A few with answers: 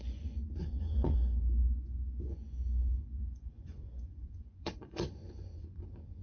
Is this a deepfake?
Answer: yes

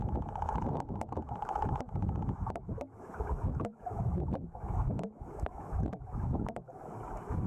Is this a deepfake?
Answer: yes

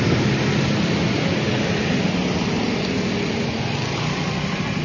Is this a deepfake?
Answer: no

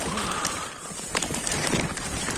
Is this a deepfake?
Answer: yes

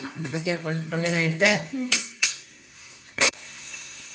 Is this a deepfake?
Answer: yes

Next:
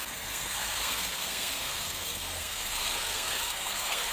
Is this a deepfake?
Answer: yes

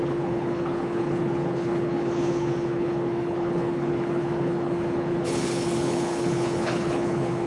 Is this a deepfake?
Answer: yes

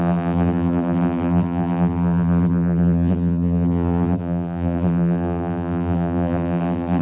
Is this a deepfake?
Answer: yes